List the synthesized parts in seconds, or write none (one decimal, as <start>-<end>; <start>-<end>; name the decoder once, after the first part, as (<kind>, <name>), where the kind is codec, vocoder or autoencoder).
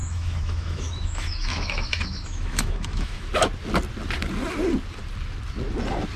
0.0-3.3 (autoencoder, DAC-VAE)